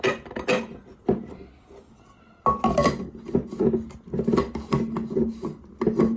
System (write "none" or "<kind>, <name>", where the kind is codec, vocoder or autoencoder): none